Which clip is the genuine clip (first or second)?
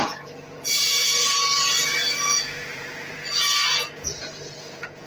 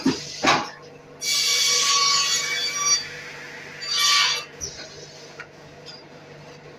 second